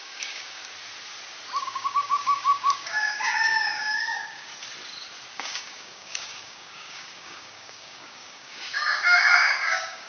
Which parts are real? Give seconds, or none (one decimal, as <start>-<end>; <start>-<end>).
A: 0.6-1.6; 4.5-5.3